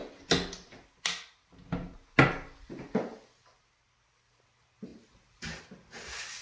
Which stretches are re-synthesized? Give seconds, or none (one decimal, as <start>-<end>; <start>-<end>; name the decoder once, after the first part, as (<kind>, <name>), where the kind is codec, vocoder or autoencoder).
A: none